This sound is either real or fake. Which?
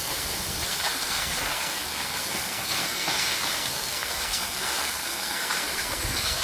fake